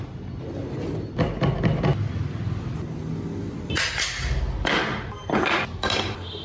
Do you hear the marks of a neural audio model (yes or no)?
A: no